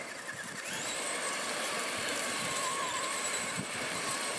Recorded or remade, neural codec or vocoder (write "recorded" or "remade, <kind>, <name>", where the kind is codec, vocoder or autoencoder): remade, vocoder, BigVGAN v2